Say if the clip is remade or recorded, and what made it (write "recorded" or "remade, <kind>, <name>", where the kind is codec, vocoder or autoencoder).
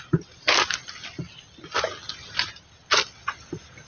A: recorded